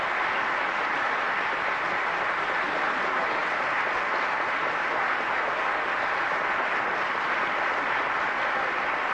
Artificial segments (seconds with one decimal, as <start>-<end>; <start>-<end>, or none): none